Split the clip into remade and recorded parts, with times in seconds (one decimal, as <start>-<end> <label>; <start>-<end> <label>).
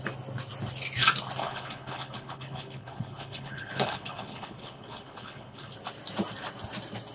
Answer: 0.0-1.4 recorded; 1.4-5.7 remade; 5.7-7.1 recorded